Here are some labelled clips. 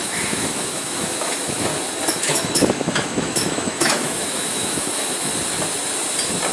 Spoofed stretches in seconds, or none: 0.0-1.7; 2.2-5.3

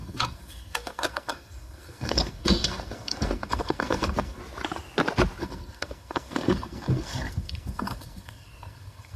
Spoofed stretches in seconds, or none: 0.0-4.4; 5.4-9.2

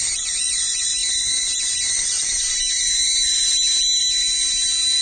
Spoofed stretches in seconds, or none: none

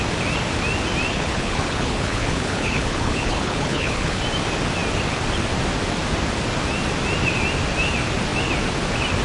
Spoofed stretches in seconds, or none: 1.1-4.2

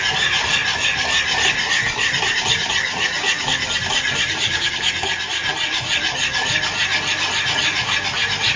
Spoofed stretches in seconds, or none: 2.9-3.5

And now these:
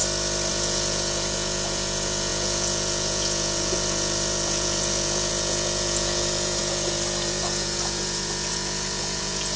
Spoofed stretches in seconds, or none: 0.5-9.6